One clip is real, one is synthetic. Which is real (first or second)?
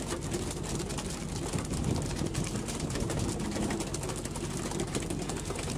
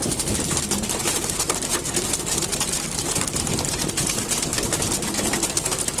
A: first